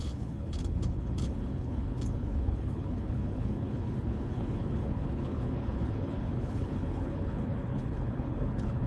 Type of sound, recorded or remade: remade